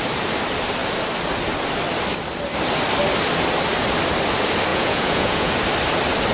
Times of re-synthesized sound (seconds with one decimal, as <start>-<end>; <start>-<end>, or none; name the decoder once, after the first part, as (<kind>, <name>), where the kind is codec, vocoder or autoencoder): 4.7-5.5 (vocoder, Vocos)